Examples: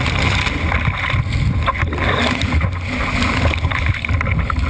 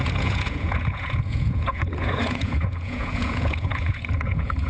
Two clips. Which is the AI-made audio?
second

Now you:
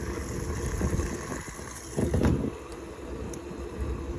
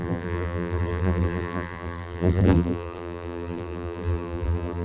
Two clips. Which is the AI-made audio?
second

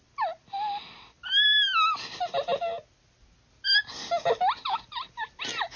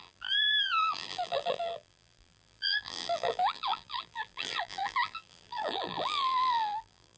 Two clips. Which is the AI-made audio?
second